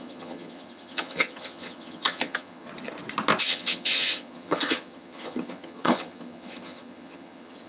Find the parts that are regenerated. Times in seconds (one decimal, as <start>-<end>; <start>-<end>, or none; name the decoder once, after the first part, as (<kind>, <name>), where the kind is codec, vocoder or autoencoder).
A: 0.0-2.7 (vocoder, HiFi-GAN); 3.4-7.7